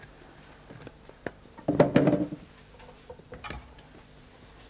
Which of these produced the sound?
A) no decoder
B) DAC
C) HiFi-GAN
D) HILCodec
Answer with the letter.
A